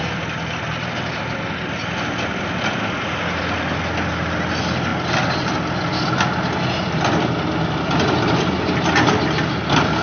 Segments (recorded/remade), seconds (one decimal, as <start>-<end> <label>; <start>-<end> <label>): 0.0-10.0 recorded